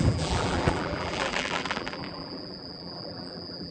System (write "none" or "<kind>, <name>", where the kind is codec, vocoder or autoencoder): vocoder, BigVGAN v2